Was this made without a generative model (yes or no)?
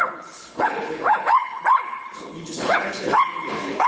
no